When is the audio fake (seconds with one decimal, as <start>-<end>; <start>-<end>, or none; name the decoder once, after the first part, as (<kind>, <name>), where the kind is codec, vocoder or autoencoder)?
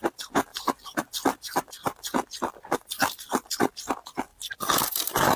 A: 0.5-3.7 (vocoder, BigVGAN v2); 4.3-5.4